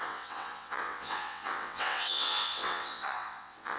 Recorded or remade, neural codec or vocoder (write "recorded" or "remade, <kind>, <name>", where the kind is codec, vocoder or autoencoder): remade, vocoder, WaveNeXt